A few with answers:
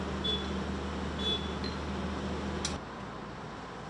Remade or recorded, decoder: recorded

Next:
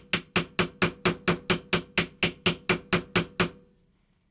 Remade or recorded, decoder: recorded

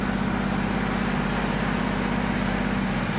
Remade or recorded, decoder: recorded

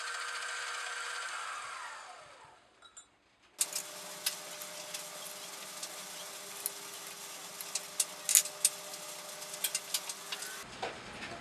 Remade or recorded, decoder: recorded